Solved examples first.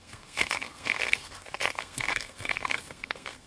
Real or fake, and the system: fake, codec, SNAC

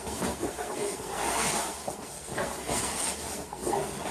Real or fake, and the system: fake, codec, SNAC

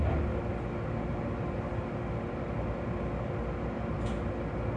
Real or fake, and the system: real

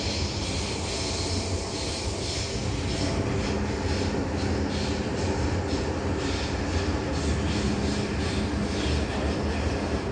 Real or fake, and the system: real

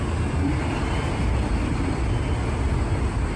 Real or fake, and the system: real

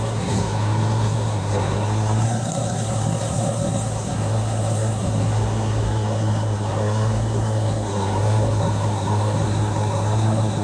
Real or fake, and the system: fake, codec, SNAC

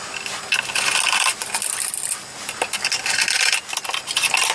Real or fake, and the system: real